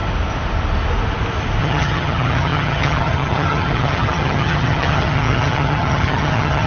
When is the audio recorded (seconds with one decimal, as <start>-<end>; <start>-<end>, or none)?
0.0-1.6